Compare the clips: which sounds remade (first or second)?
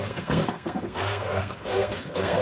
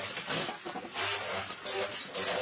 first